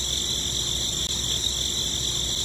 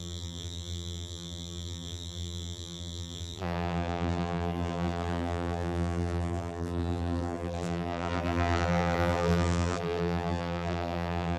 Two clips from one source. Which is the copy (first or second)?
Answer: second